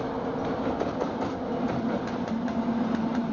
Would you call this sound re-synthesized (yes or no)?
no